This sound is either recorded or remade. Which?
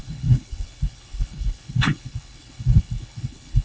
remade